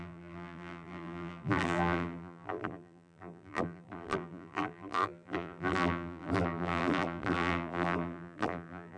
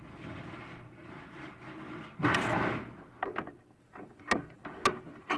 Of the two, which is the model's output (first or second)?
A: first